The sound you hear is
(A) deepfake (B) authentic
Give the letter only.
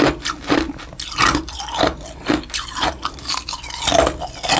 B